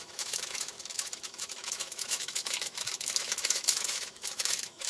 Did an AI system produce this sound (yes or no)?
yes